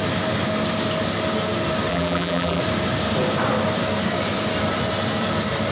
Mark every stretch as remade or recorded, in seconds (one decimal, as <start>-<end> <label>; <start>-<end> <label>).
0.0-1.9 recorded; 1.9-2.6 remade; 2.6-5.7 recorded